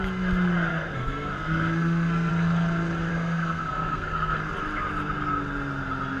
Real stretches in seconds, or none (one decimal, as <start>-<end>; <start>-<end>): 0.0-0.7; 2.3-3.1; 4.5-6.2